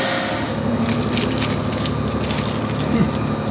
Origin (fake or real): real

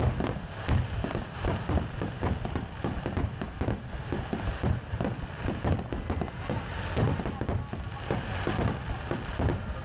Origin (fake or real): real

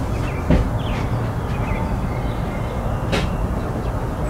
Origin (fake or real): real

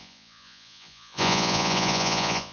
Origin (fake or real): fake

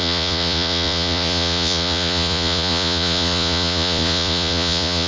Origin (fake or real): fake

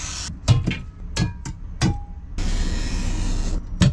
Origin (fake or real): real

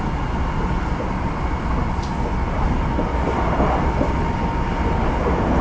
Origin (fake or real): real